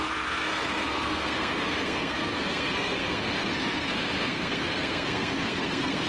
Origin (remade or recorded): remade